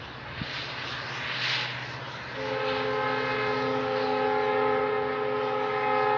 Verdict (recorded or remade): recorded